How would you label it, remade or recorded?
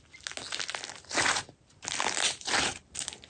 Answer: recorded